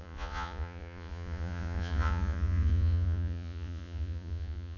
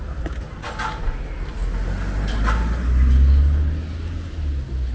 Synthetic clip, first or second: first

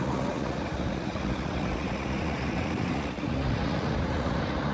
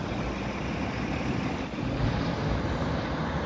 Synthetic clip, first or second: first